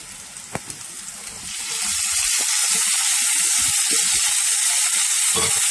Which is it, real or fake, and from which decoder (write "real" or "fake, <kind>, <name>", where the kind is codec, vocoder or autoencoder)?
real